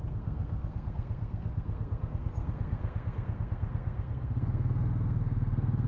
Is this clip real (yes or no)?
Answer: no